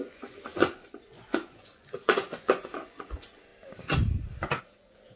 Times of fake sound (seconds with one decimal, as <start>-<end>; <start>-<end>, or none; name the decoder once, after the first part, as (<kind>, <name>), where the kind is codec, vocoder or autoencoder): 0.0-3.5 (vocoder, Vocos); 4.6-5.2